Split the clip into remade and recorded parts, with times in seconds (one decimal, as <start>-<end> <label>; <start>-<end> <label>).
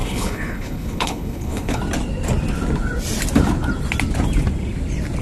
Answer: 0.0-1.8 remade; 1.8-5.2 recorded